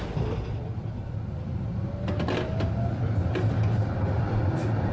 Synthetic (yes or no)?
no